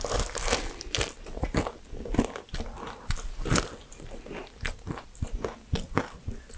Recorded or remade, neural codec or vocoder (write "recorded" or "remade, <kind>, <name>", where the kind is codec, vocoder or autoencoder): recorded